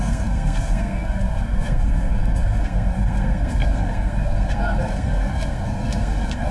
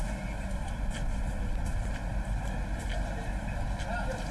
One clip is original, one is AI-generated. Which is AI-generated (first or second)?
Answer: first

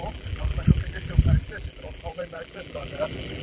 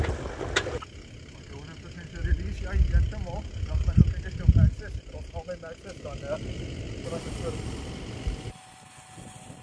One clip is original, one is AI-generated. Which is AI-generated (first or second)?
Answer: first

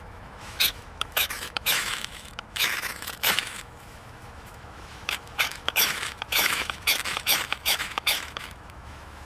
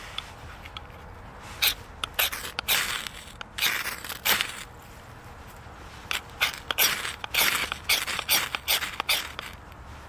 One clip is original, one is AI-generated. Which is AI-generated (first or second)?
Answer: first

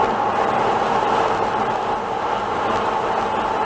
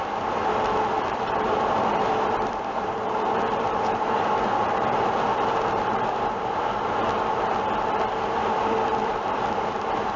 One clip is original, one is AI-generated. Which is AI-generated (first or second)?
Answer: second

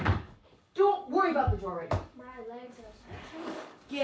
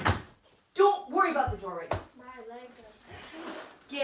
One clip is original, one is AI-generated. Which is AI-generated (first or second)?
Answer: first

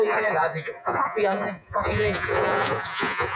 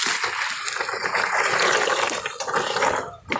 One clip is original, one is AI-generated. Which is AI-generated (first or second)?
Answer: first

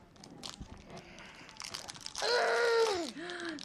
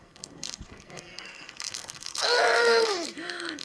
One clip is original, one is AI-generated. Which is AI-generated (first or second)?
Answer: second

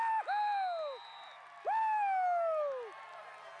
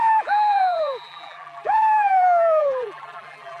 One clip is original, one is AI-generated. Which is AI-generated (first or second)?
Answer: second